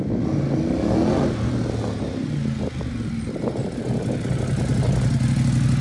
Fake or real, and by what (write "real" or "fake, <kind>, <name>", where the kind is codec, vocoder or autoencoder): real